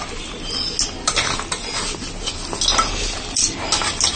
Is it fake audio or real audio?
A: real